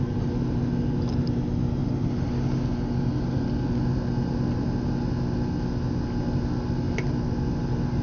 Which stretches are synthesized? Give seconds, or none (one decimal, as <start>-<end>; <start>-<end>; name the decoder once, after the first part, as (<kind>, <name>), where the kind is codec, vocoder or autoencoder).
1.8-2.5 (vocoder, BigVGAN v2)